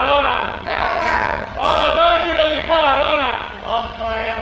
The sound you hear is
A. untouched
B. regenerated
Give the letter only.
B